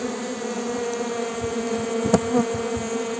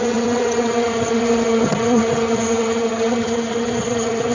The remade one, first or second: second